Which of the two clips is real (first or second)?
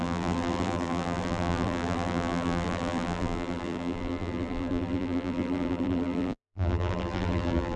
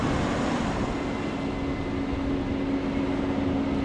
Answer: second